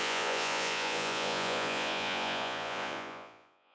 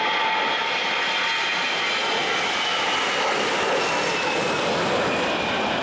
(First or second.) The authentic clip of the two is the second